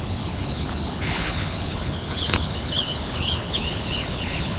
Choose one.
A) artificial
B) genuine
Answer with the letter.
A